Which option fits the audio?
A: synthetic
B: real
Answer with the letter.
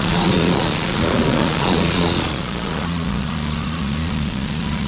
A